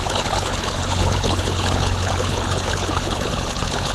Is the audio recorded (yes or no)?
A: no